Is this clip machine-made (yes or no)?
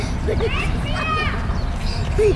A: yes